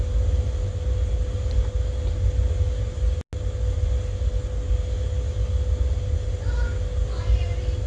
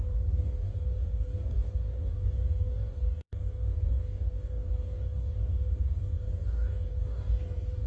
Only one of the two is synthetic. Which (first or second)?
second